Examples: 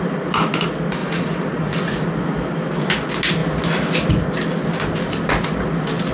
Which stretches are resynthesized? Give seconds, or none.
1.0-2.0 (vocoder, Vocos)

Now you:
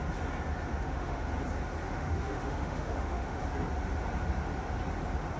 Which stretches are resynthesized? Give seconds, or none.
0.7-1.3 (autoencoder, DAC-VAE); 1.9-3.4

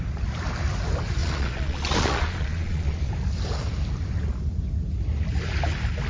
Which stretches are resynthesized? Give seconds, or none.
1.2-3.1 (vocoder, Vocos)

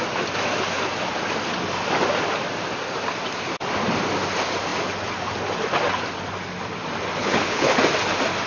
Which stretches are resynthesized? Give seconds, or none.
7.2-7.8 (codec, HILCodec)

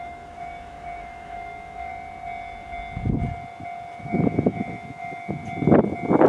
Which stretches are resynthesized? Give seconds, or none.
0.0-1.9 (autoencoder, DAC-VAE); 4.0-5.4

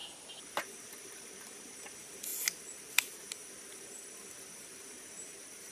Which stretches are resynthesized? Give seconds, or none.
0.5-2.3 (vocoder, BigVGAN v2); 2.9-3.4; 4.6-5.7

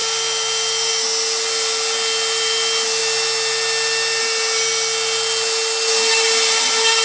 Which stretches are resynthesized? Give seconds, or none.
none